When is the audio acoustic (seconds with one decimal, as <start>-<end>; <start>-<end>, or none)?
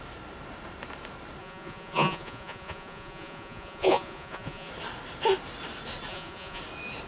0.0-1.4; 4.7-6.1; 6.6-7.1